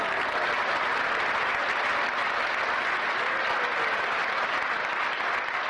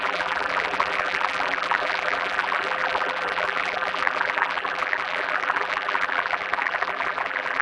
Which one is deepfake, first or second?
second